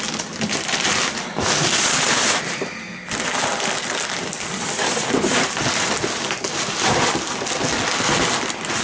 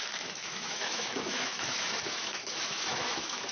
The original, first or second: first